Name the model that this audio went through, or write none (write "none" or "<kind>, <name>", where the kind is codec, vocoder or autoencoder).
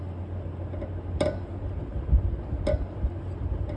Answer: none